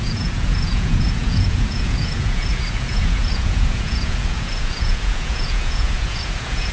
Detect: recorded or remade remade